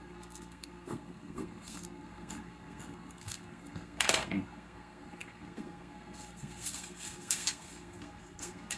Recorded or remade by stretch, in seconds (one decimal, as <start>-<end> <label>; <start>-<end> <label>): 0.0-8.8 remade